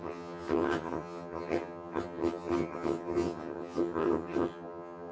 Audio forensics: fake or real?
fake